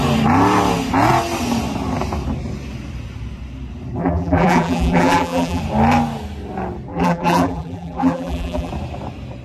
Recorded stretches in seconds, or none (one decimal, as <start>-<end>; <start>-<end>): 0.0-4.0; 5.6-6.9; 8.7-9.4